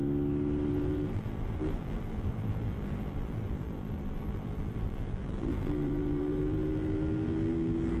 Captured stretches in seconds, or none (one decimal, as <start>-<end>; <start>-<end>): 0.0-0.7